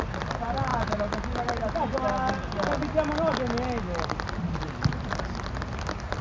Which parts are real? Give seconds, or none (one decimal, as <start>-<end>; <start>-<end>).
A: 0.0-6.2